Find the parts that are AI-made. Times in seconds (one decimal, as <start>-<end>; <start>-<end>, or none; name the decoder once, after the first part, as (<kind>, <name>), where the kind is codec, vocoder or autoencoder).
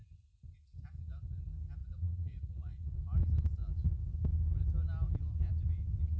1.8-3.0 (vocoder, Vocos)